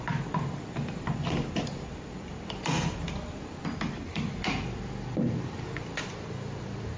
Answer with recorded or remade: remade